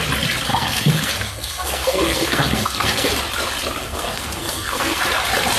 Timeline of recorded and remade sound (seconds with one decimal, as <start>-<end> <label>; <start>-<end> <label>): 0.0-0.5 recorded; 0.5-3.1 remade; 3.1-3.8 recorded; 3.8-5.0 remade; 5.0-5.6 recorded